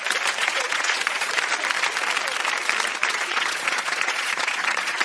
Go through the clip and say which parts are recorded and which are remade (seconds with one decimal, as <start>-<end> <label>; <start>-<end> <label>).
0.0-0.4 recorded; 0.4-1.3 remade; 1.3-3.1 recorded; 3.1-5.0 remade